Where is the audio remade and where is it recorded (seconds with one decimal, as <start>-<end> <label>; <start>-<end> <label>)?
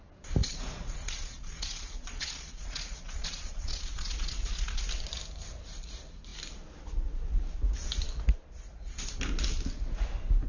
0.0-0.4 recorded; 0.4-4.8 remade; 4.8-10.5 recorded